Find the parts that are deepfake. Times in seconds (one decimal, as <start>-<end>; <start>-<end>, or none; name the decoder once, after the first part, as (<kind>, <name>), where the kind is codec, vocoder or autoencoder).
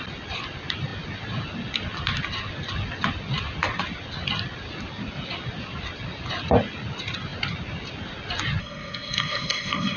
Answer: 8.6-10.0 (codec, SNAC)